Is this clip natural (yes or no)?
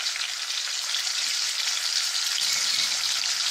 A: no